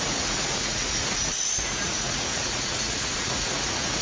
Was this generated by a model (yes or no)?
yes